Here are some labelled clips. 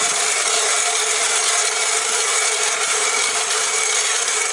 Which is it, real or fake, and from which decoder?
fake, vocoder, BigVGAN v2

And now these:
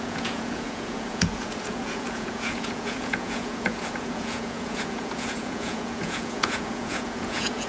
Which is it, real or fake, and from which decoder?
fake, vocoder, Vocos